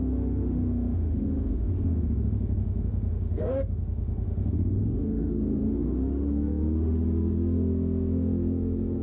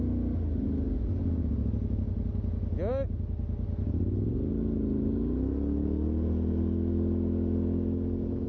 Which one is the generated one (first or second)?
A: first